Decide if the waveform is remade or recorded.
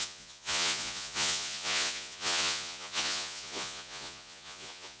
remade